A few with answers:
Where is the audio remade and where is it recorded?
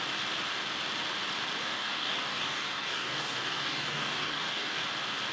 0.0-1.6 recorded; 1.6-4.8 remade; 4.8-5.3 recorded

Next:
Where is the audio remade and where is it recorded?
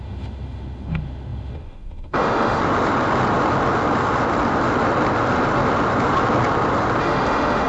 0.0-2.6 remade; 2.6-7.0 recorded; 7.0-7.7 remade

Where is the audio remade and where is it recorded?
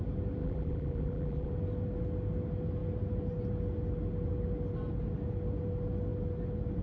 0.0-0.4 recorded; 0.4-1.5 remade; 1.5-6.8 recorded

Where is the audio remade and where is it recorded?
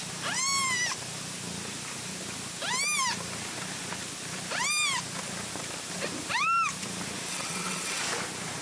0.0-7.3 recorded; 7.3-8.0 remade; 8.0-8.6 recorded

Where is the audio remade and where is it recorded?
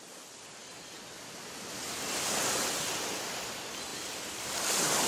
0.0-5.1 recorded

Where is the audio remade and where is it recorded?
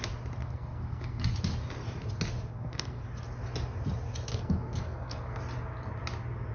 0.0-0.4 recorded; 0.4-1.3 remade; 1.3-2.5 recorded; 2.5-3.0 remade; 3.0-4.3 recorded; 4.3-5.4 remade; 5.4-6.5 recorded